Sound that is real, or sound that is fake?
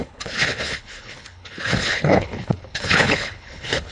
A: fake